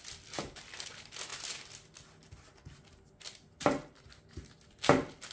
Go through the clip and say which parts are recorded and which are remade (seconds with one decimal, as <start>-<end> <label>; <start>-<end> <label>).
0.0-5.3 recorded

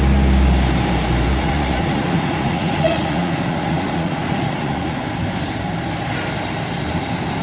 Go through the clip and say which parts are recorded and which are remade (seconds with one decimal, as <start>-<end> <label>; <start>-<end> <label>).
0.0-1.3 recorded; 1.3-5.0 remade; 5.0-7.4 recorded

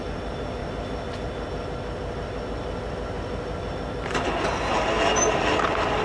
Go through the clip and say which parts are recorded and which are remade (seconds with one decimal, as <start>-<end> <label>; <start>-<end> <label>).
0.0-6.0 recorded

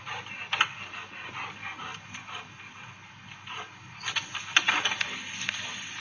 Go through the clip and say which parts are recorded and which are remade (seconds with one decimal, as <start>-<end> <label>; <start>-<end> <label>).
0.0-6.0 recorded

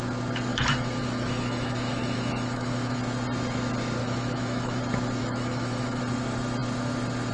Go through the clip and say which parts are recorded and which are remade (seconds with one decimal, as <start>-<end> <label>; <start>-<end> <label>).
0.0-0.5 recorded; 0.5-3.0 remade; 3.0-4.0 recorded; 4.0-4.8 remade; 4.8-5.2 recorded; 5.2-6.0 remade; 6.0-7.3 recorded

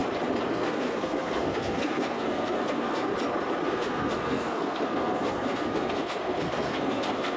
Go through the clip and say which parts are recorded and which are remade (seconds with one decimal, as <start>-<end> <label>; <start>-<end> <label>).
0.0-0.5 recorded; 0.5-3.1 remade; 3.1-3.7 recorded; 3.7-7.4 remade

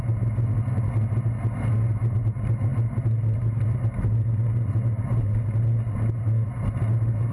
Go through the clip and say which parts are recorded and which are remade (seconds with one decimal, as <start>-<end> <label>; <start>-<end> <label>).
0.0-7.3 recorded